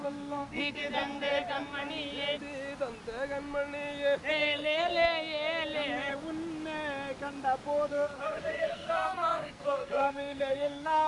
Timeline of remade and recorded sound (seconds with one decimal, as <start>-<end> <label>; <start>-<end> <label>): 0.0-0.8 remade; 0.8-4.3 recorded; 4.3-4.9 remade; 4.9-7.9 recorded; 7.9-11.1 remade